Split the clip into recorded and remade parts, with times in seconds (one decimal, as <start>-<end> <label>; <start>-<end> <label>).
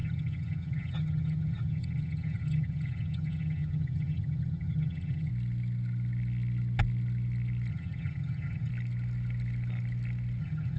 0.0-5.3 remade; 5.3-7.7 recorded; 7.7-8.7 remade; 8.7-10.4 recorded; 10.4-10.8 remade